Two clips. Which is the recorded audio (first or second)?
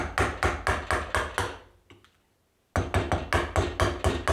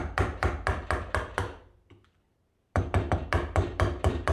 first